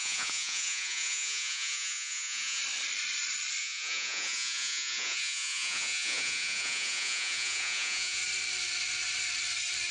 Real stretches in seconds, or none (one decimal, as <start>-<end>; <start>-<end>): 2.6-3.6; 8.2-9.9